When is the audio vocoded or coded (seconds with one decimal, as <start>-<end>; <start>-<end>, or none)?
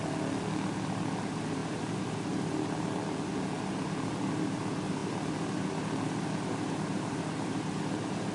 none